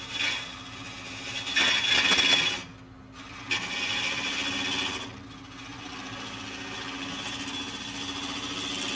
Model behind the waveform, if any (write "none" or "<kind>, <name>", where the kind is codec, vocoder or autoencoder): none